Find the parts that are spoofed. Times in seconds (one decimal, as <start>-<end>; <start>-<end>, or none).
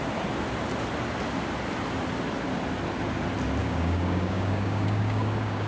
3.6-5.7